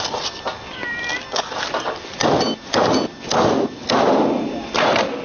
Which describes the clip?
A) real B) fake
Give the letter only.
A